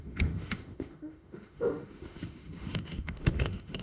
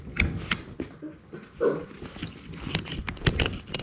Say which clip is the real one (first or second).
second